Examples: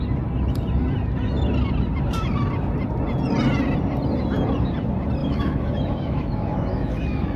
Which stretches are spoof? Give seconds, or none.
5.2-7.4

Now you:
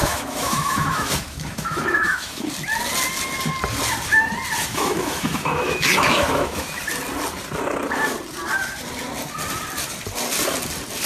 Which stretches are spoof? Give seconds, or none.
0.0-2.5; 4.6-6.8